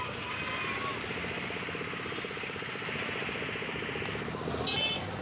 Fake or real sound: real